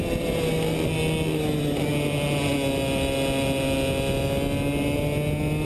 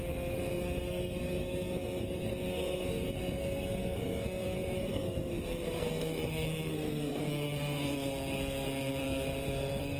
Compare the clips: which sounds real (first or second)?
first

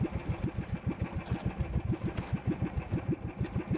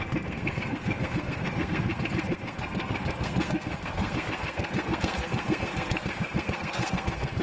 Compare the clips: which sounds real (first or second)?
first